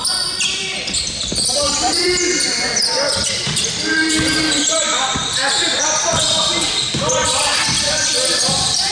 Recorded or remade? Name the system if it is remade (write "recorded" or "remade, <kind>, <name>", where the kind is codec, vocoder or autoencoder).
remade, vocoder, BigVGAN v2